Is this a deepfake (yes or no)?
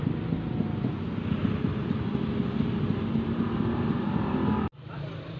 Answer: no